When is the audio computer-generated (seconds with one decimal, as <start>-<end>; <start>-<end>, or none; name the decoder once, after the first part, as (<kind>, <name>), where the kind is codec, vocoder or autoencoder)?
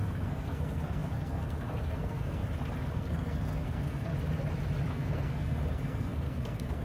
0.0-2.4 (codec, SNAC); 2.9-4.1; 4.9-6.8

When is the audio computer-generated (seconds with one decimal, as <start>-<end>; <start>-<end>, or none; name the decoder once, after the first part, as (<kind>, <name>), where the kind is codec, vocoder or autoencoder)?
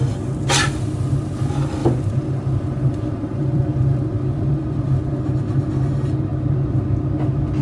1.8-5.0 (vocoder, BigVGAN v2)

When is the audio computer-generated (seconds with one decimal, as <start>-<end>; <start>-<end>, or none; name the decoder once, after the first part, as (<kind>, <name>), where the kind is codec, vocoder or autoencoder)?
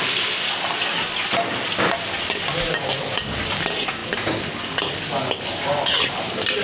none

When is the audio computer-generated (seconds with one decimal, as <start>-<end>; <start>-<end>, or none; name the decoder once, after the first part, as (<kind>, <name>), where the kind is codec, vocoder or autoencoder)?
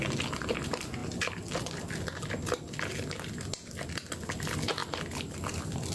1.0-1.7 (vocoder, BigVGAN v2)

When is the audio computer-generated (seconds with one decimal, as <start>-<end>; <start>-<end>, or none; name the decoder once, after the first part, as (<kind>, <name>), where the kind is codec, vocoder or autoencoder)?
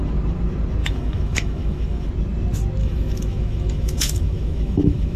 0.8-2.1 (autoencoder, DAC-VAE); 2.8-5.2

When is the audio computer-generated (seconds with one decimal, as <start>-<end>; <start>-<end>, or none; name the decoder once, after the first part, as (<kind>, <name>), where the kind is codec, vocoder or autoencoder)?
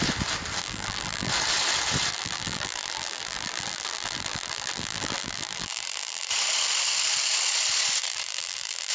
0.6-1.3 (vocoder, BigVGAN v2); 2.1-6.3; 8.0-8.9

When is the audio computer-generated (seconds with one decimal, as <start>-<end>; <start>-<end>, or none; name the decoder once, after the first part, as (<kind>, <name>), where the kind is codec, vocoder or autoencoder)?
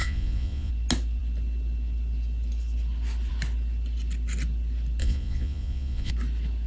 0.0-0.7 (vocoder, Vocos); 5.0-6.1